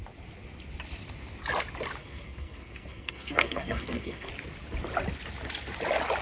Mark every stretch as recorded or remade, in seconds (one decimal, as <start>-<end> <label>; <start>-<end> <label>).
0.0-2.0 recorded; 2.0-4.3 remade; 4.3-6.2 recorded